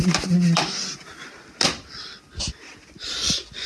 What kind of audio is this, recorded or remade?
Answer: recorded